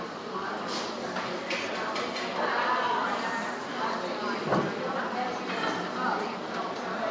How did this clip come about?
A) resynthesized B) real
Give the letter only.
A